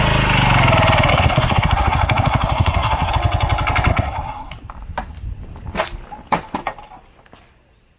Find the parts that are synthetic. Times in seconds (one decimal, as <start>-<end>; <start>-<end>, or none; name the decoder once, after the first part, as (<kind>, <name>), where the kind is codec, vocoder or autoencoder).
1.1-3.1 (codec, SNAC); 3.9-4.5